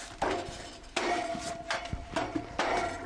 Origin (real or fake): real